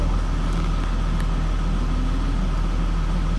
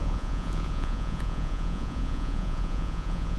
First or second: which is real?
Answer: first